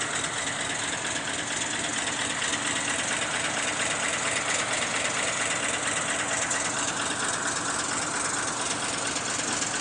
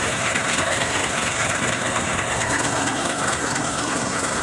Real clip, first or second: first